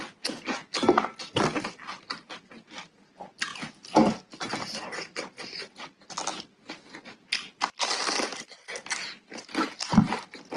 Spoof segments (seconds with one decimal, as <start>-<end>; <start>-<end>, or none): none